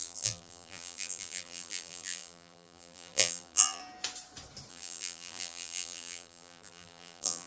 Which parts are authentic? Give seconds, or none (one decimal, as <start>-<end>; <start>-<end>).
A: 3.8-4.7